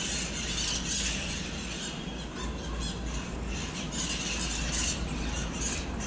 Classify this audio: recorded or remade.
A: recorded